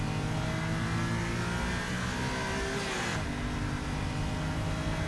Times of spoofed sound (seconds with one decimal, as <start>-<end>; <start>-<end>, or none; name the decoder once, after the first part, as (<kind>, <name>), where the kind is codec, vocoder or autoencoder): none

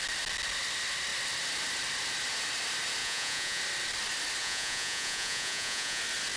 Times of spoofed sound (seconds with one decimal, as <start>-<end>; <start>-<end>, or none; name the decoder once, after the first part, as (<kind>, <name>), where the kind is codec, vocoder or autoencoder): 3.0-3.6 (vocoder, Vocos); 4.4-6.0

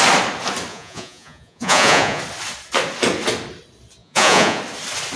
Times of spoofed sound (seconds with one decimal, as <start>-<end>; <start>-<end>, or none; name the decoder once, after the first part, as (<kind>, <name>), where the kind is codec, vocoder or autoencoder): 0.7-2.2 (vocoder, Vocos); 4.0-4.6